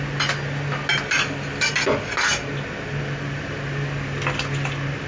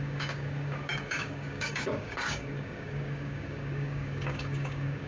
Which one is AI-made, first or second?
second